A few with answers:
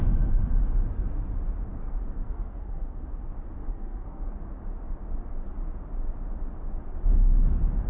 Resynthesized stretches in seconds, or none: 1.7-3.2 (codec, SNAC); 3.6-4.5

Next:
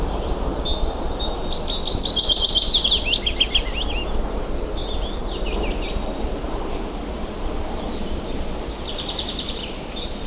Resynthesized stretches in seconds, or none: none

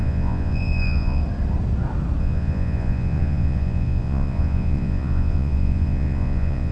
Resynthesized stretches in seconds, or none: 0.0-1.2 (vocoder, Vocos); 2.2-6.7

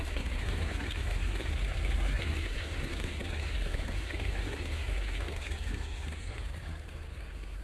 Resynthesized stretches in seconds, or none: 0.0-7.6 (codec, SNAC)

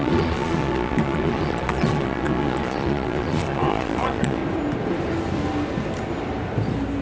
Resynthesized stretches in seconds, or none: 0.0-4.4 (vocoder, Vocos)